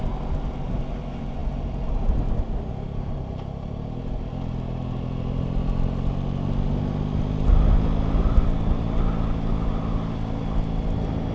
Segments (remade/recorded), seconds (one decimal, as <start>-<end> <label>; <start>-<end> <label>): 0.0-11.3 recorded